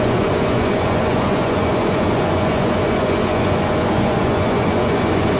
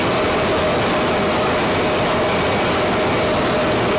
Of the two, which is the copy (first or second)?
first